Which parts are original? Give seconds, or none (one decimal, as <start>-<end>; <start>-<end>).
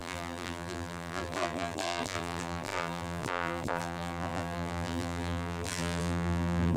none